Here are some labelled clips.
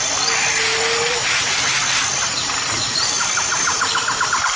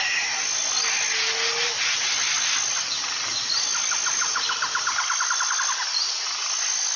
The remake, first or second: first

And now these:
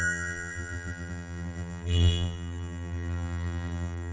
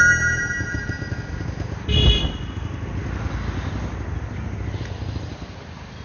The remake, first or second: first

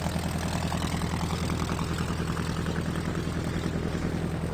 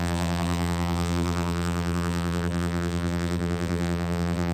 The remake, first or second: second